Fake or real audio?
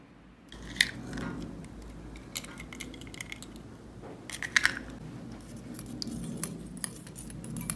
real